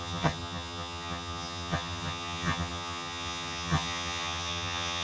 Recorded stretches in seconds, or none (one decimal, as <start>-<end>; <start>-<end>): none